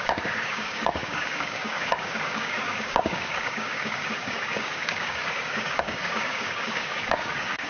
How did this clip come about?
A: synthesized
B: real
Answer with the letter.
A